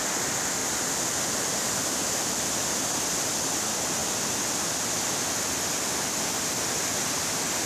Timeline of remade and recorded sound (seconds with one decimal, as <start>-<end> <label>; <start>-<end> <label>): 0.0-7.7 recorded